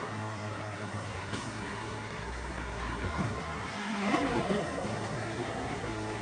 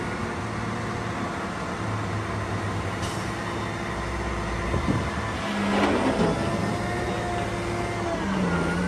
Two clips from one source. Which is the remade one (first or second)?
first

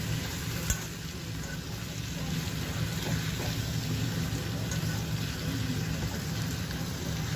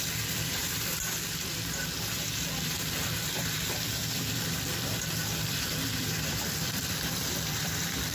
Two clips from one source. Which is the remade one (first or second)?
second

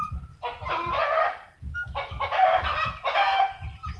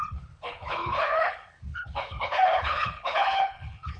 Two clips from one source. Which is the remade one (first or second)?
second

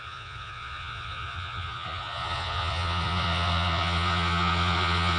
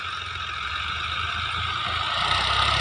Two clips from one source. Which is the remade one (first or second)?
first